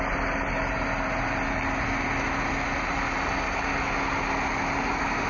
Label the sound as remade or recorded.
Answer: recorded